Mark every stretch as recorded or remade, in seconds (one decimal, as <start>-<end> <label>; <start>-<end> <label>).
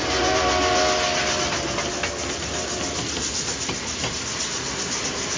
0.0-5.4 recorded